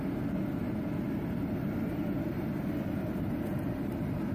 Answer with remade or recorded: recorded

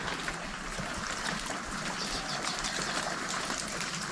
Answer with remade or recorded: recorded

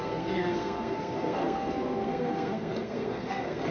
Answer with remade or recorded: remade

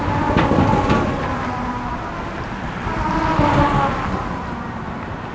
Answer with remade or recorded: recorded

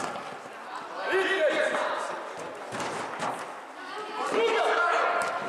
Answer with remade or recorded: recorded